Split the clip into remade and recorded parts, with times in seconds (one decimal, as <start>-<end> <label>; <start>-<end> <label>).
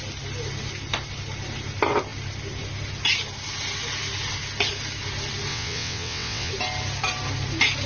0.0-5.5 recorded; 5.5-6.5 remade; 6.5-7.9 recorded